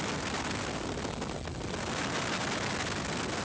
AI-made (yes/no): no